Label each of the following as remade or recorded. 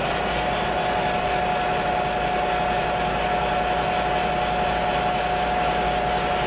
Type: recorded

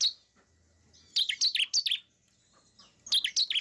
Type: recorded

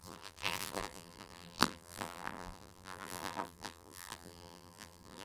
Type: remade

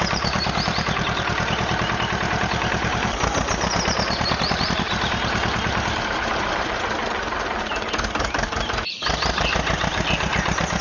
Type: remade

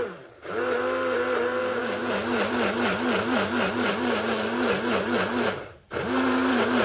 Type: remade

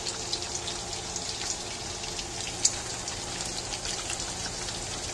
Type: recorded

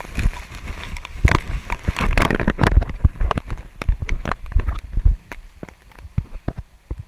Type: recorded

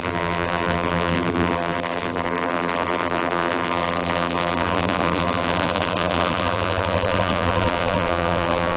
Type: remade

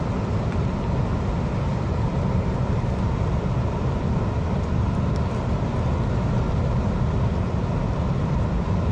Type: recorded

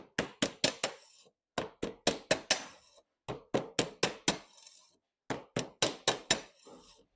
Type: recorded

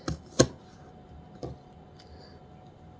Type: recorded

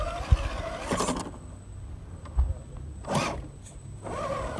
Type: recorded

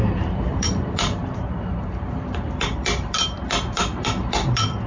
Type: remade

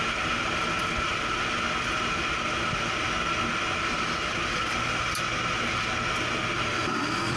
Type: recorded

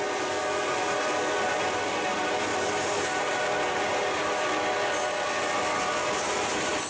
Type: recorded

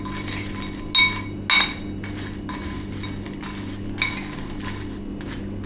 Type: recorded